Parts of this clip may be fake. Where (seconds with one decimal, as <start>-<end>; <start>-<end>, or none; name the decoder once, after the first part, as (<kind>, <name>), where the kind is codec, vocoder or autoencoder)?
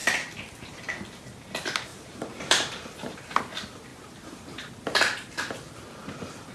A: 1.9-3.4 (vocoder, BigVGAN v2); 3.9-4.7